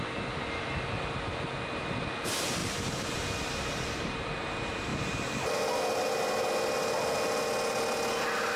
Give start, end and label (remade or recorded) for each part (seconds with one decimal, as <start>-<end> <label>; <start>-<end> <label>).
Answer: 0.0-2.6 recorded; 2.6-4.4 remade; 4.4-4.9 recorded; 4.9-5.6 remade; 5.6-8.6 recorded